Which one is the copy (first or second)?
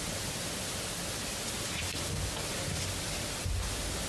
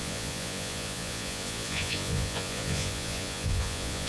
second